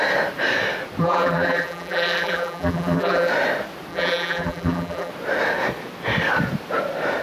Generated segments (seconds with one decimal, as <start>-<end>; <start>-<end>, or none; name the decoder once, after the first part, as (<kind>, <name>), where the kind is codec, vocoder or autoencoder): 1.0-3.3 (vocoder, BigVGAN v2); 3.9-5.1